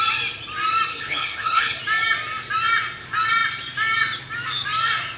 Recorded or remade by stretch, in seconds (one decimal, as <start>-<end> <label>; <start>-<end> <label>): 0.0-0.9 recorded; 0.9-1.8 remade; 1.8-5.2 recorded